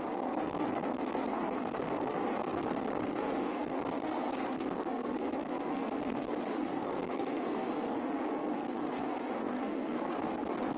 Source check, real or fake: fake